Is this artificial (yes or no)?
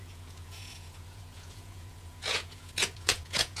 yes